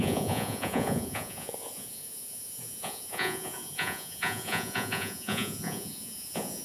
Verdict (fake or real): fake